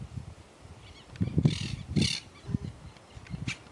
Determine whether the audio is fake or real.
real